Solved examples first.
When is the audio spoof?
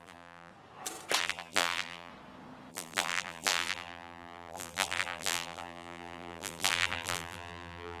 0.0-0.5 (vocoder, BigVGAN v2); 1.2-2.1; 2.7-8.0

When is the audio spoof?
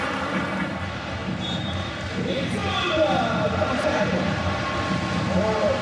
none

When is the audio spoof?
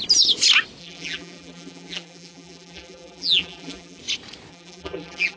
0.8-4.0 (vocoder, BigVGAN v2); 4.5-5.4